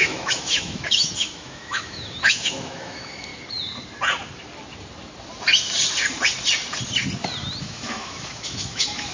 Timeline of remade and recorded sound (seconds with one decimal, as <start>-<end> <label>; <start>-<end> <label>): 0.0-3.3 remade; 3.3-7.6 recorded; 7.6-9.1 remade